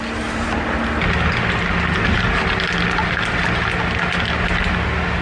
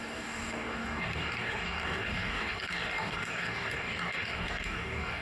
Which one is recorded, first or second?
first